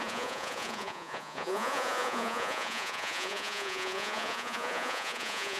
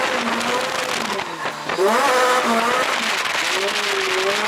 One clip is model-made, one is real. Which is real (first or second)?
second